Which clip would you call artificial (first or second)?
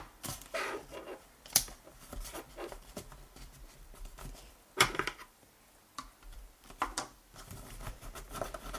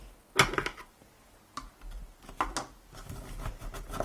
first